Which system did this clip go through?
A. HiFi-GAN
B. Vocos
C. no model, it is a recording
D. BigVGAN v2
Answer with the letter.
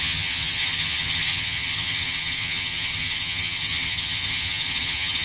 A